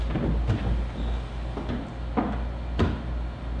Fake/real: real